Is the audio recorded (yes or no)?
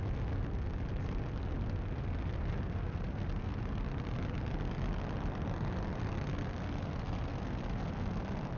yes